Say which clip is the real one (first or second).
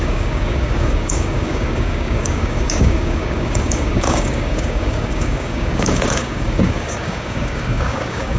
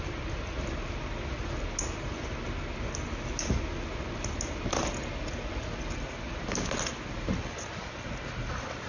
second